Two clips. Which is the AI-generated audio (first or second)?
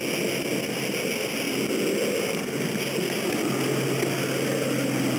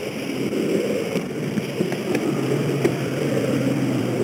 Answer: second